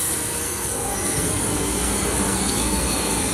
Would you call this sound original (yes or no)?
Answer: no